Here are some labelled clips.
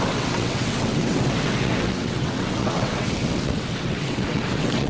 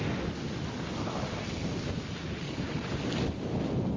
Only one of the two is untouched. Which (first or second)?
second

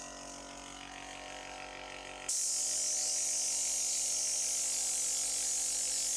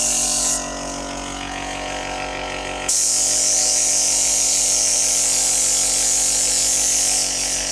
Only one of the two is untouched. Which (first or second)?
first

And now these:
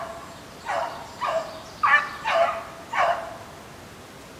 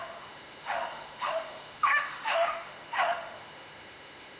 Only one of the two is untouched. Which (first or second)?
first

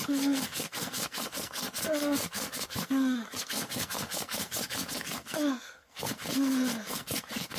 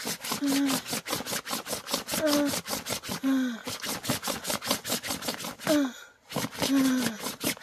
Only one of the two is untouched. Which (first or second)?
second